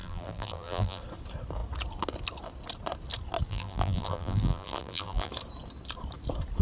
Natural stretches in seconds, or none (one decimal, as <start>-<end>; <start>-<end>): 1.0-3.5; 5.3-6.6